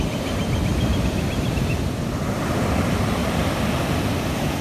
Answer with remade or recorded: remade